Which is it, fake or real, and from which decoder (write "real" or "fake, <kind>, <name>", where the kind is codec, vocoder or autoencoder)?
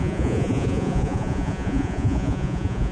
fake, vocoder, Vocos